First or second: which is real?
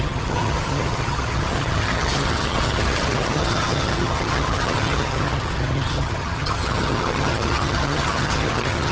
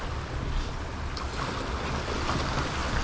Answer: second